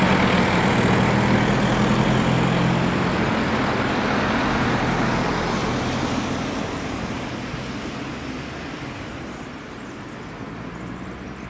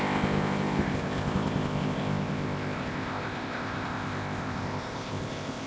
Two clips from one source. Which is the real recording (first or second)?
first